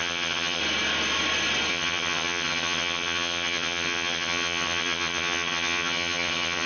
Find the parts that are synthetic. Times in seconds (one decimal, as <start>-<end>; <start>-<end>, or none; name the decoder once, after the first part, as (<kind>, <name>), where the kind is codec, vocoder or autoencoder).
0.0-0.6 (vocoder, HiFi-GAN); 1.7-6.7